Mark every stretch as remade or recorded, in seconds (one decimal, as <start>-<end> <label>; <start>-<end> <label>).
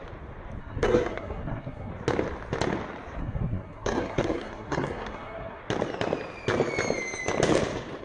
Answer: 0.0-0.6 recorded; 0.6-1.9 remade; 1.9-3.2 recorded; 3.2-5.6 remade; 5.6-8.0 recorded